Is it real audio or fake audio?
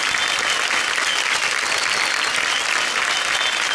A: real